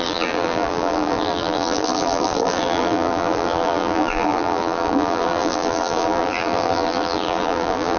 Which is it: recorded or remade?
remade